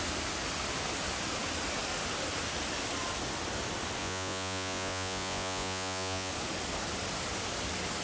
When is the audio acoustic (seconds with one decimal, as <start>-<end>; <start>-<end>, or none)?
0.0-4.0; 6.3-8.0